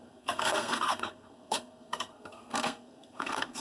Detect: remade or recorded remade